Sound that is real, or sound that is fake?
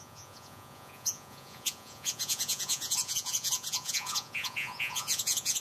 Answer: fake